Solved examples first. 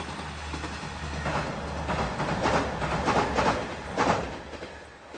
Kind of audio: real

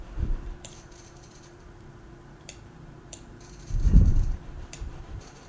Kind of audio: fake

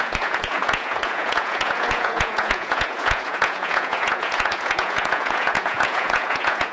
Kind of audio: fake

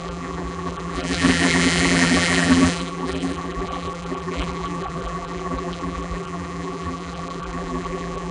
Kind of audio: fake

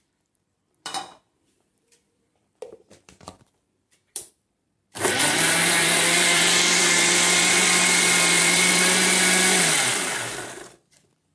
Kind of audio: fake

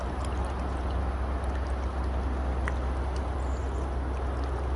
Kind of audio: real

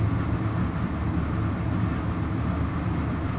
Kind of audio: real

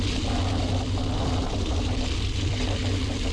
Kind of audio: real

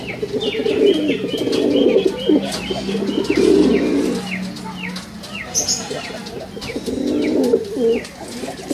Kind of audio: real